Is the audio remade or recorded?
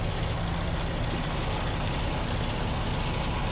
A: recorded